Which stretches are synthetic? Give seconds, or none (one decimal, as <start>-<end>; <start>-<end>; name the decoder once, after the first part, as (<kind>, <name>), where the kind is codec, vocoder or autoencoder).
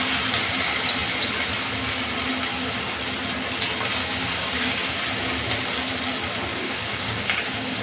4.0-4.8 (codec, DAC); 6.5-7.8